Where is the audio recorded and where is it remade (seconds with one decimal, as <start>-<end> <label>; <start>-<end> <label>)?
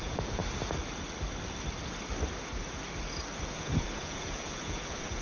0.0-0.4 remade; 0.4-3.5 recorded; 3.5-5.2 remade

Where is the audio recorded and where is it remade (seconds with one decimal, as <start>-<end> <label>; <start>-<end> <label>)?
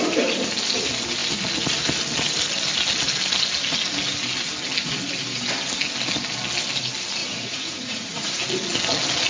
0.0-7.2 recorded; 7.2-8.4 remade; 8.4-9.3 recorded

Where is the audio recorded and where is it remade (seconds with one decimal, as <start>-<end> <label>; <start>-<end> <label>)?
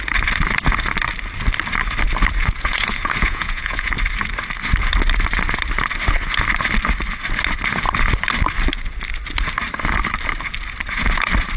0.0-2.4 recorded; 2.4-3.9 remade; 3.9-11.6 recorded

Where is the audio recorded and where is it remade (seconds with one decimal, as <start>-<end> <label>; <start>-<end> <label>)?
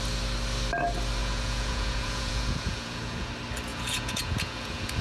0.0-1.2 recorded; 1.2-3.3 remade; 3.3-3.7 recorded; 3.7-5.0 remade